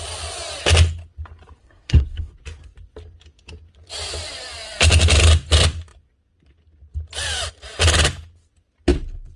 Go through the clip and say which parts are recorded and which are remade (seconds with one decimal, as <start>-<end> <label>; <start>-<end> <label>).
0.0-1.6 recorded; 1.6-2.3 remade; 2.3-9.4 recorded